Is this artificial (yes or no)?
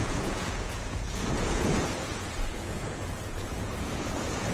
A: yes